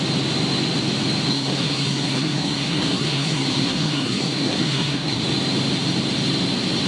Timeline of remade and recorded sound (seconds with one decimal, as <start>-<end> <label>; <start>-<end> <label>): 0.0-1.3 recorded; 1.3-5.2 remade; 5.2-6.9 recorded